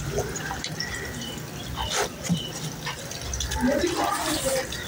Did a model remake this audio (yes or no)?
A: no